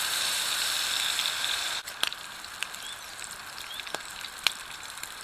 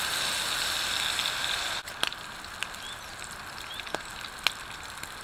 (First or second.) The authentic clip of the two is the second